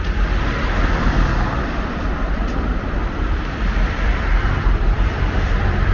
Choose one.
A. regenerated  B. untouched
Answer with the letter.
A